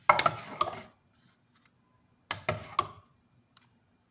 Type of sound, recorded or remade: recorded